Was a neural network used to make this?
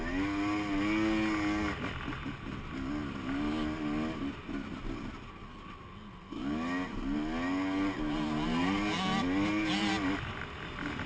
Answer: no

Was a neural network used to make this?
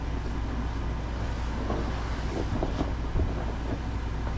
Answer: no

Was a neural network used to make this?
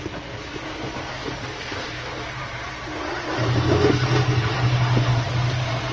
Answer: no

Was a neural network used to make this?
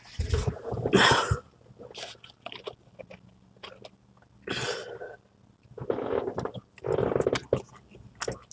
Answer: no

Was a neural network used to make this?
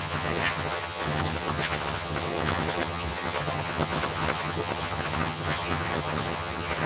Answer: yes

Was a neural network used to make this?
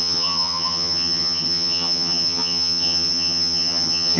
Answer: yes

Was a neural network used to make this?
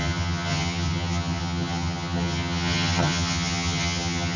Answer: yes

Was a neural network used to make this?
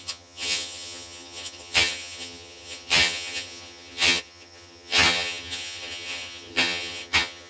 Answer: yes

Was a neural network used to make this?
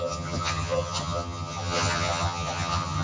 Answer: yes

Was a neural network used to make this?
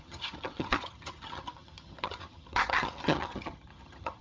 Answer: yes